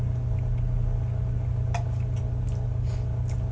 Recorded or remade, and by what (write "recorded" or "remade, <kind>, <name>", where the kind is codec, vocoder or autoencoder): recorded